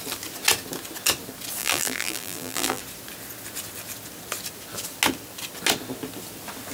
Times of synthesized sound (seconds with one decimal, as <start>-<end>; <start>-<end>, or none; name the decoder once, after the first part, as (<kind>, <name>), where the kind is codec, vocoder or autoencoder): 1.6-2.8 (vocoder, BigVGAN v2)